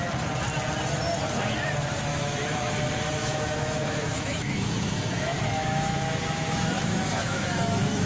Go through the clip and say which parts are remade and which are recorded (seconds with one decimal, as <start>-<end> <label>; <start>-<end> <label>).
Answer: 0.0-2.1 recorded; 2.1-2.7 remade; 2.7-3.2 recorded; 3.2-8.1 remade